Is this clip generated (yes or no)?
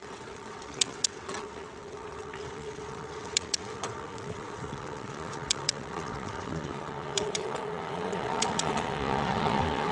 yes